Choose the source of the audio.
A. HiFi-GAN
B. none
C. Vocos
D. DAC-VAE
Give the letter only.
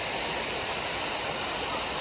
B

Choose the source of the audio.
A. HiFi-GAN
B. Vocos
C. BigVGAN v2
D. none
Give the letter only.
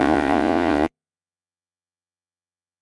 B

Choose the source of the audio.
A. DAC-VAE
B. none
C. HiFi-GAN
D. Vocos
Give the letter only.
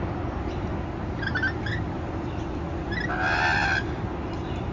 B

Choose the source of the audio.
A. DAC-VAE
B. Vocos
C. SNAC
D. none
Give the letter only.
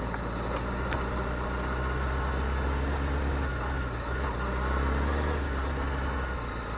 D